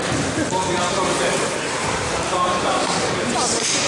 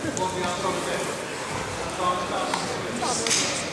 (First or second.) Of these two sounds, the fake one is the first